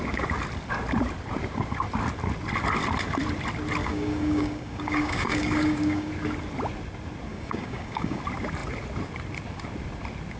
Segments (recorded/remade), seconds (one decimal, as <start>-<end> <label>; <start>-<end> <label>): 0.0-3.8 recorded; 3.8-6.1 remade; 6.1-7.3 recorded; 7.3-8.2 remade; 8.2-10.4 recorded